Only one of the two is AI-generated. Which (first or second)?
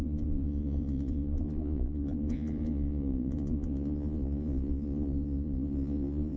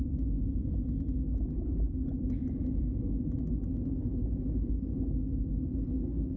first